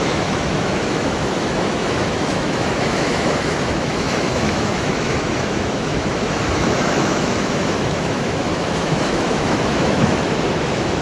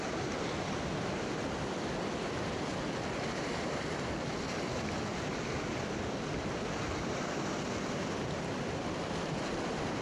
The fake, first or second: first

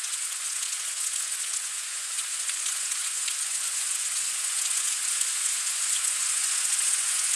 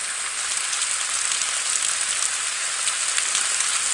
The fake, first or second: first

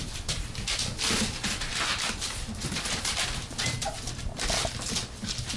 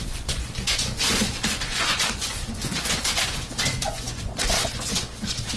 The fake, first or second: second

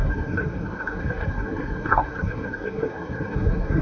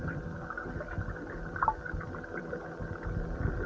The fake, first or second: first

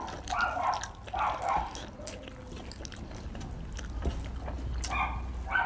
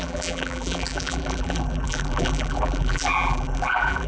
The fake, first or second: second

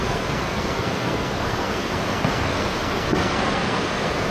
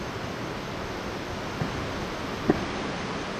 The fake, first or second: first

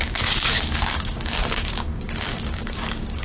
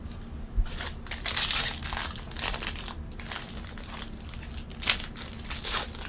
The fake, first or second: first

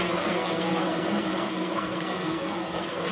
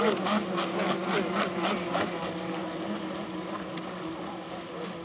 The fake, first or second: first